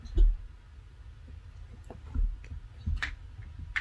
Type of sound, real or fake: real